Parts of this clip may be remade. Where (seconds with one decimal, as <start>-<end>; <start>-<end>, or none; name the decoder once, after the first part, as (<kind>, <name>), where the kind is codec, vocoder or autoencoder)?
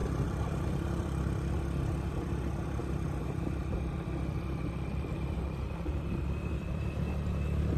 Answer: 0.0-7.8 (vocoder, BigVGAN v2)